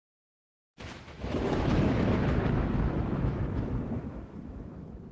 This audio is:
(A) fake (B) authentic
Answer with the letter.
A